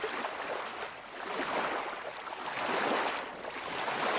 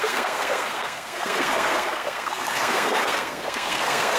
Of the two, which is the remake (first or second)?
second